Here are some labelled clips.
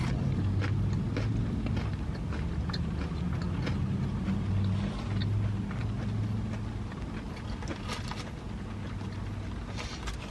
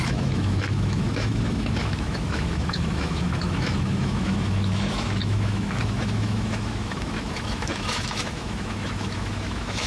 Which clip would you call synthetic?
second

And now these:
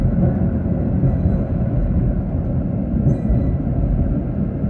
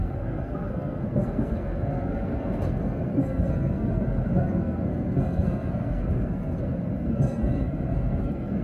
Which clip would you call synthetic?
second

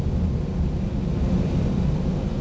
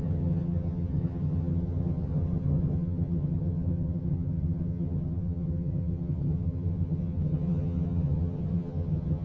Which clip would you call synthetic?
second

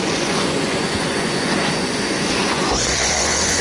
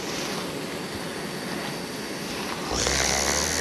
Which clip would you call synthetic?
first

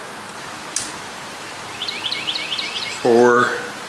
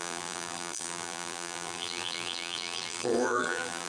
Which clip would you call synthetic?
second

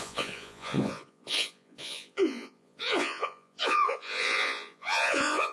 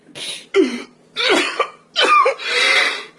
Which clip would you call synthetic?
first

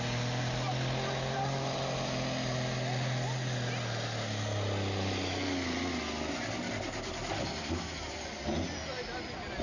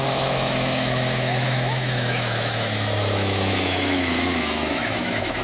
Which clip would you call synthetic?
second